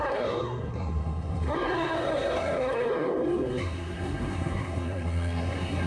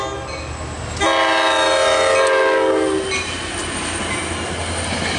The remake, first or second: first